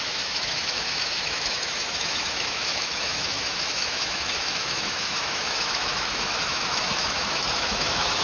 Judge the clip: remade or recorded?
remade